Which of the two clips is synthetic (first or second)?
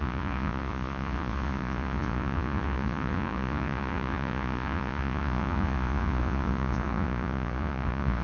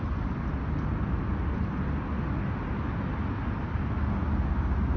first